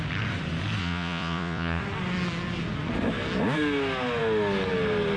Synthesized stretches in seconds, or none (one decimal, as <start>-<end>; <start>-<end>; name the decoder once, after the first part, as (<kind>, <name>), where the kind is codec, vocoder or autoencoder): 0.8-1.8 (vocoder, Vocos)